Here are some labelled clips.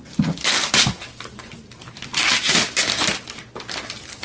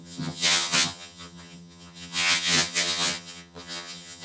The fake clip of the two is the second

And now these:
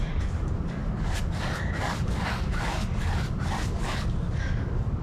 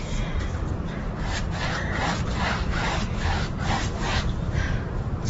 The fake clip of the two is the first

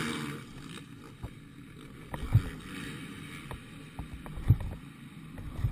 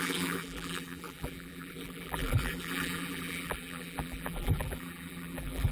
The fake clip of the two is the second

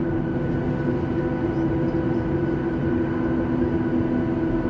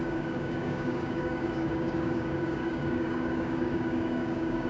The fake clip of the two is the second